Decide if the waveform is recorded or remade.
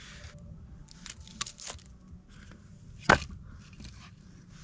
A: recorded